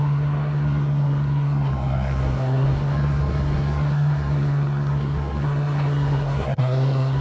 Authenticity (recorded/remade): remade